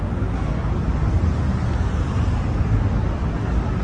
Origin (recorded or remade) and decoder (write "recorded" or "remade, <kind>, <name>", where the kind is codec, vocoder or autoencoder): recorded